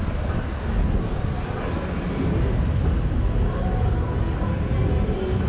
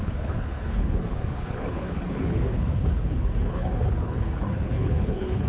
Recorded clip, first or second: first